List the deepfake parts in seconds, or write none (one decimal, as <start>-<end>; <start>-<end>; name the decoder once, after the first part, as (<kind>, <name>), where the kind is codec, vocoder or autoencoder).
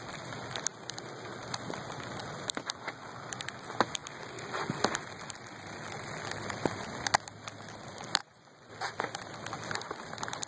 8.2-8.7 (vocoder, Vocos)